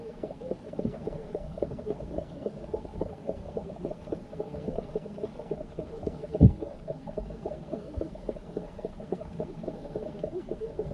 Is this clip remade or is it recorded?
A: remade